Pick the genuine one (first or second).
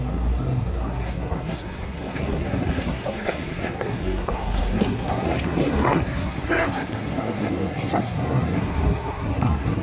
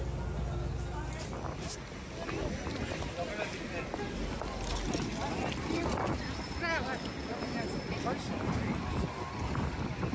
second